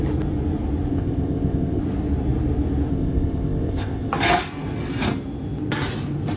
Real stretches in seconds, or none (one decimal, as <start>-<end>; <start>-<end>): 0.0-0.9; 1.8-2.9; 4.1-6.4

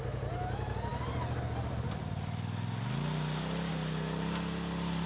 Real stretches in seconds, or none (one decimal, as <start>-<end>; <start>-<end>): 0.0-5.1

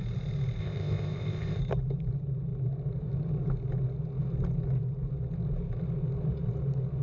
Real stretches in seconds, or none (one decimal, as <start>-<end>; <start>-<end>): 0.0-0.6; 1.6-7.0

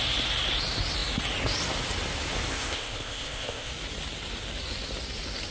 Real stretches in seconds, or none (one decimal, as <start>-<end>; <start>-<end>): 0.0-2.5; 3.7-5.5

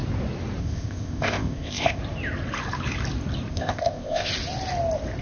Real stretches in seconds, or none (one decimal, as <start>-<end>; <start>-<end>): 0.0-0.6; 2.0-3.5; 4.3-5.2

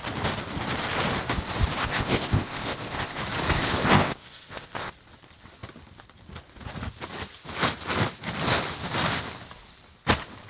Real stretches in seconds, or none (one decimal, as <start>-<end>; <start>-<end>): 0.0-1.8; 3.2-3.6; 4.9-10.5

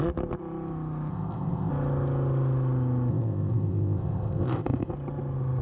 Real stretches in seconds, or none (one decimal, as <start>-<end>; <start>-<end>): 0.0-1.1; 1.7-3.1; 4.9-5.6